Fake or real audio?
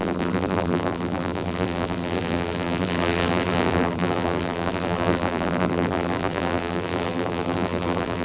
fake